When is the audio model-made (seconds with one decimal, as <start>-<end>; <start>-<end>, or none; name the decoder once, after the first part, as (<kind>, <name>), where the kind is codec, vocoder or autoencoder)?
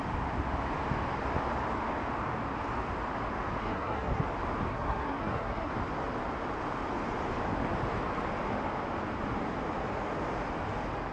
3.6-4.2 (codec, SNAC); 4.7-5.7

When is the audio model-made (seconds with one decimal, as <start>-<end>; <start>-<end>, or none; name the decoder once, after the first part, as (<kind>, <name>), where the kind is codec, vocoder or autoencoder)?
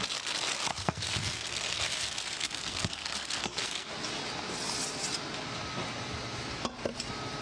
0.7-3.9 (codec, SNAC)